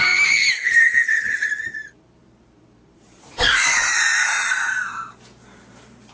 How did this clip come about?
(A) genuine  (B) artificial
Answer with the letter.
B